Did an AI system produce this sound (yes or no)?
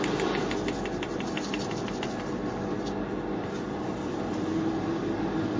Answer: no